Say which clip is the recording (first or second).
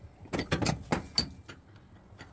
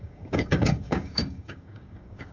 first